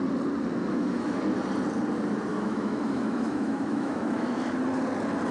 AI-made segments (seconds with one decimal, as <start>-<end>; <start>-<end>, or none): 0.6-1.2; 2.3-4.6